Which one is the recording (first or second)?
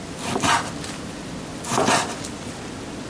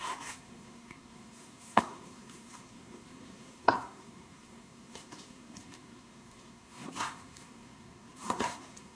first